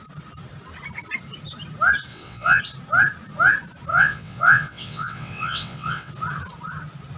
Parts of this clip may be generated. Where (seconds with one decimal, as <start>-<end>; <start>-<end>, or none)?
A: 2.1-2.6; 3.9-6.1